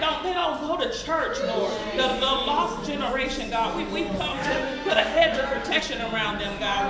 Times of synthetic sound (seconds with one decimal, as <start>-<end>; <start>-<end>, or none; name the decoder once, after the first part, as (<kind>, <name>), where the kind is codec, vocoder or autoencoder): 4.3-5.8 (codec, SNAC)